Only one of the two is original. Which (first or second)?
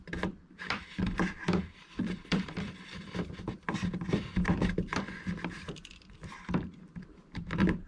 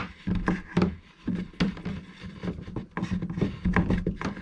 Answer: second